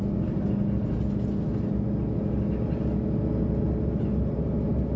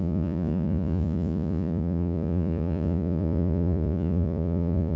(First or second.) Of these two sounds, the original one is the first